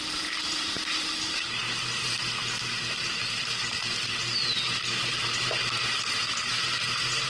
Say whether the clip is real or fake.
fake